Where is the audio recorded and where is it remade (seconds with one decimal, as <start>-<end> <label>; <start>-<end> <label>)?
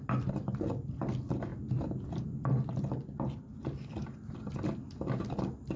0.0-5.8 recorded